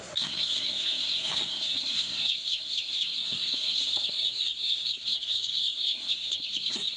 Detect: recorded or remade remade